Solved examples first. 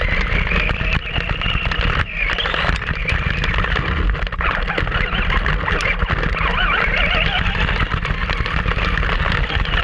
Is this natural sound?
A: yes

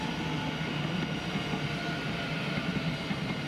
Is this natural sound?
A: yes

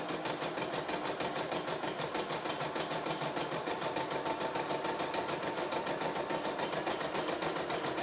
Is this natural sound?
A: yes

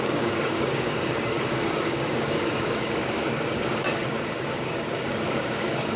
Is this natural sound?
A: no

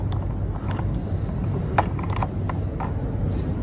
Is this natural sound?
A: yes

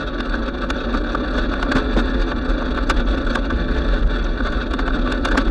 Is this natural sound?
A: yes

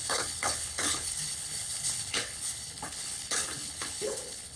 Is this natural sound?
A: no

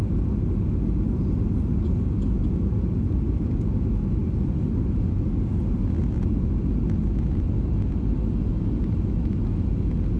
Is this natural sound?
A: yes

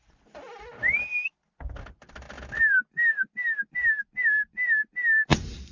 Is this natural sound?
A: yes